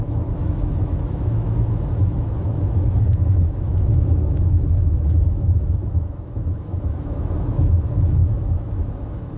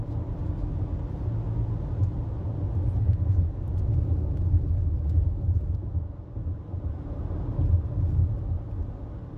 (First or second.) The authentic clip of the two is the second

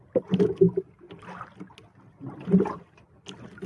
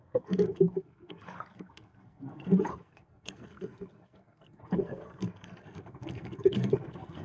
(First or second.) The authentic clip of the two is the first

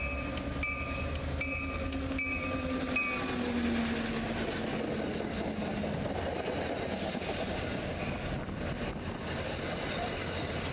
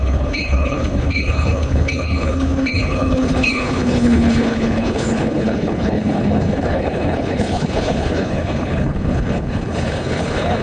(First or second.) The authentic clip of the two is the first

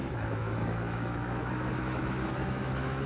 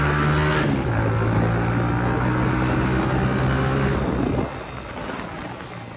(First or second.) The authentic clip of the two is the second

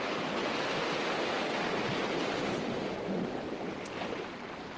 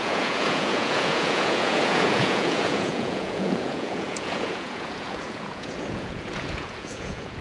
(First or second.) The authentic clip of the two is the first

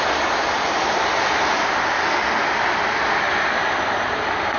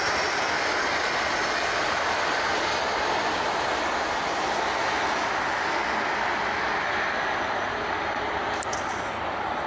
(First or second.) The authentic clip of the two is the second